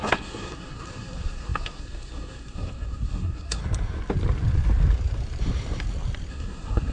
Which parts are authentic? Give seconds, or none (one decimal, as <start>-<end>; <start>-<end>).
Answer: 3.6-6.3